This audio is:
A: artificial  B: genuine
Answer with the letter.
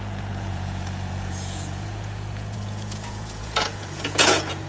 A